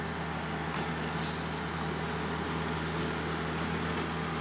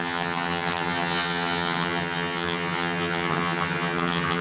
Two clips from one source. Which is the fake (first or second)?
second